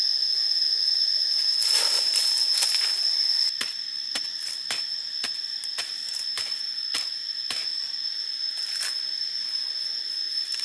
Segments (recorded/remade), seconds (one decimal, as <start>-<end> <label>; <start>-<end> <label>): 0.0-10.6 recorded